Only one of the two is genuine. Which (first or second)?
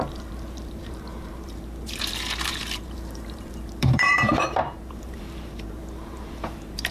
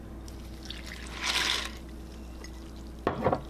second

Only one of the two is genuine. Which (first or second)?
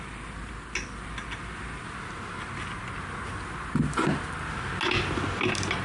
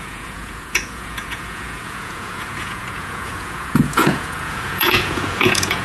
first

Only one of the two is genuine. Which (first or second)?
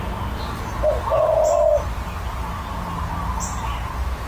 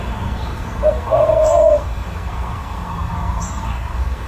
first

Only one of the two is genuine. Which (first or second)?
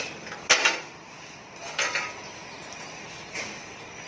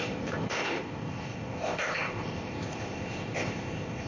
first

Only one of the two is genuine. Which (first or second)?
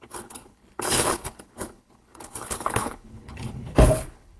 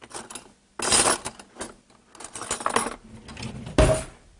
second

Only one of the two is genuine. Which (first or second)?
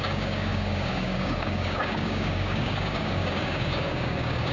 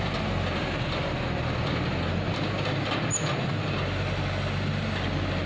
second